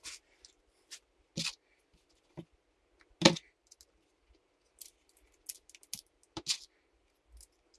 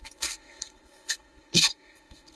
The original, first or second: first